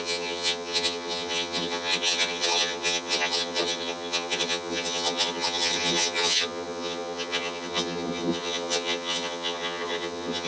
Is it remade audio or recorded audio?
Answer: remade